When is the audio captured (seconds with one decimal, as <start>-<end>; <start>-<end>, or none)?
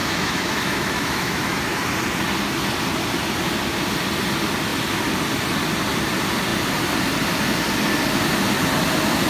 1.6-9.3